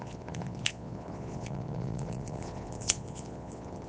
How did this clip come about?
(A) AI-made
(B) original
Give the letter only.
A